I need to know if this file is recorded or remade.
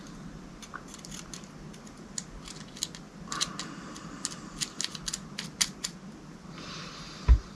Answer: recorded